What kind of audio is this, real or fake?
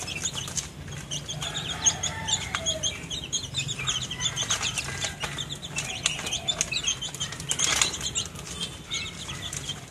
real